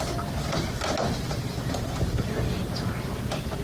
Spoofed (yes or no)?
no